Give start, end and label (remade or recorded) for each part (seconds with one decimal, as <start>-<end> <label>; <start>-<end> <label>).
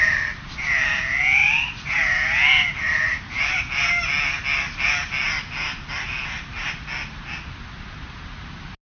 0.0-8.9 recorded